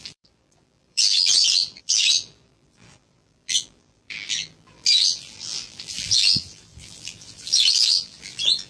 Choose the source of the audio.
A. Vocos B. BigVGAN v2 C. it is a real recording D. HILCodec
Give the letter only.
B